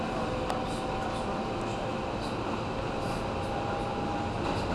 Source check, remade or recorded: recorded